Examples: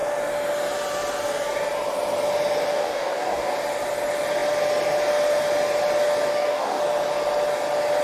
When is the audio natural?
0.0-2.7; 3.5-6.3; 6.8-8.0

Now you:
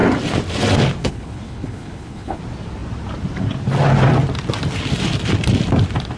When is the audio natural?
0.0-1.0; 2.4-6.2

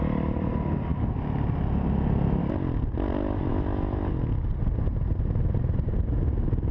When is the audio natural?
0.0-3.5; 4.1-6.7